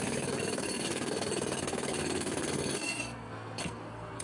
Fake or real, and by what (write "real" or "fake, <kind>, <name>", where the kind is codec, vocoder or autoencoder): fake, codec, SNAC